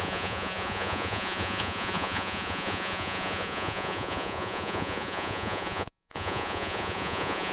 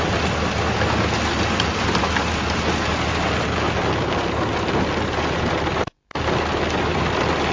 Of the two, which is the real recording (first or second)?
second